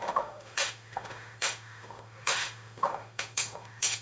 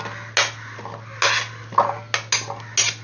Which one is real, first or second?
second